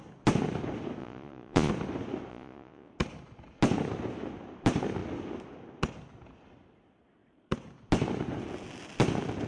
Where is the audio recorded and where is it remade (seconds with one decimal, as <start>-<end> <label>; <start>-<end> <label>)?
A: 0.0-1.0 recorded; 1.0-1.7 remade; 1.7-2.3 recorded; 2.3-2.9 remade; 2.9-9.5 recorded

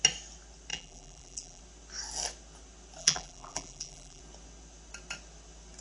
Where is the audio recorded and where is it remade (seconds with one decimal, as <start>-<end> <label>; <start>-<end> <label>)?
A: 0.0-0.7 recorded; 0.7-1.6 remade; 1.6-3.0 recorded; 3.0-4.2 remade; 4.2-5.8 recorded

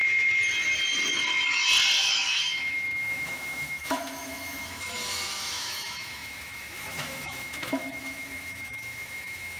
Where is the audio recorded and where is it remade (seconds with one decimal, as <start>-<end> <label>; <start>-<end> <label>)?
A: 0.0-2.0 recorded; 2.0-9.6 remade

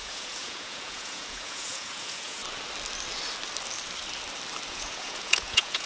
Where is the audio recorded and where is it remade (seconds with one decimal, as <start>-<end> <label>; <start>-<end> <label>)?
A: 0.0-2.4 remade; 2.4-4.7 recorded; 4.7-5.9 remade

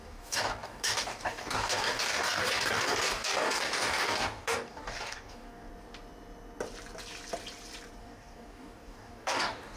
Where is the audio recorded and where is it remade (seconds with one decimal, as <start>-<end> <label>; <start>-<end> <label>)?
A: 0.0-5.7 remade; 5.7-8.0 recorded; 8.0-9.8 remade